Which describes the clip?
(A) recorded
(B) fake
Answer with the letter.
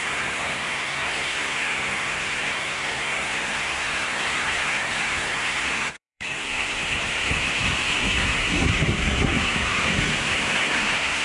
B